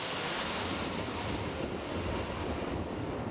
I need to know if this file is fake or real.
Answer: real